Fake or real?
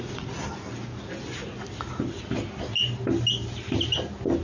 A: real